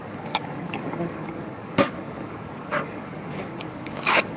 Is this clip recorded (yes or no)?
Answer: no